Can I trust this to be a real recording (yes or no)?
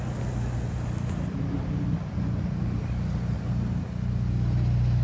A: yes